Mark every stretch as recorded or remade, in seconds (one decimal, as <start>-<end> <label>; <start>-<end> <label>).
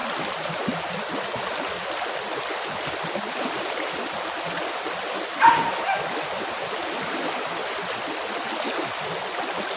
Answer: 0.0-1.1 remade; 1.1-9.8 recorded